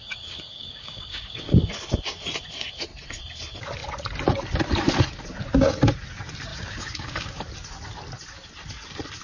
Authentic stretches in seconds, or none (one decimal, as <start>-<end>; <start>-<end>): 1.7-6.5; 7.4-9.2

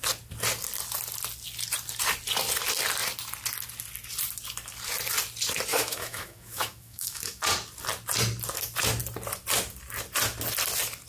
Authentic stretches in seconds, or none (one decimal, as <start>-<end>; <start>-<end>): 0.0-5.7; 7.4-11.1

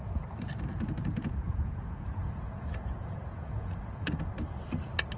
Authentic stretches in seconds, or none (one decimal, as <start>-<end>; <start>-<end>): 0.0-1.2; 4.3-5.2

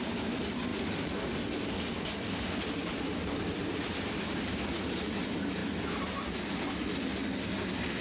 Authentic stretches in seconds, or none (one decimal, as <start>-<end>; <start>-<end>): 5.6-7.4

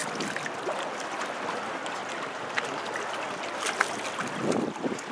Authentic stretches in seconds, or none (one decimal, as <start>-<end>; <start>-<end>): 0.0-5.1

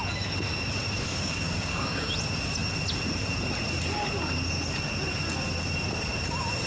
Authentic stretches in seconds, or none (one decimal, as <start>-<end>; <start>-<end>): 0.0-1.1; 2.1-6.7

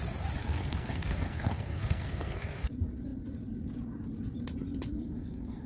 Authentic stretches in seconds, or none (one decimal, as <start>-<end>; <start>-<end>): 0.0-0.4; 2.7-4.9

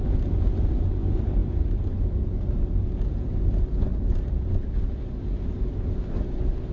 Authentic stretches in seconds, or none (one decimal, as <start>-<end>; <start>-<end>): 0.0-6.7